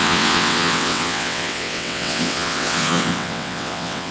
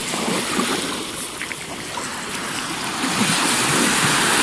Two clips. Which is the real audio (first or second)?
second